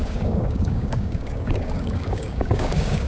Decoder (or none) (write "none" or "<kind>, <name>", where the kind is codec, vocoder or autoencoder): codec, DAC